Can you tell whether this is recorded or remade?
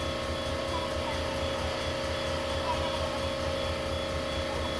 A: recorded